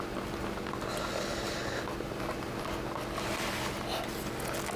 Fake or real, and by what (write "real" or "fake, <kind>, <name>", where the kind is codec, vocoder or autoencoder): real